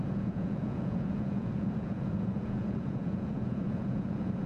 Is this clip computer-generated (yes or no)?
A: yes